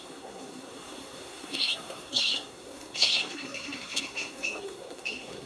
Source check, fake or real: fake